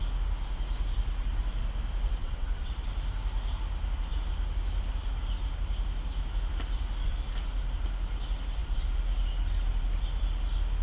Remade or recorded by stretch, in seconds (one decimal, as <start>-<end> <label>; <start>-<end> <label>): 0.0-2.2 recorded; 2.2-2.7 remade; 2.7-10.8 recorded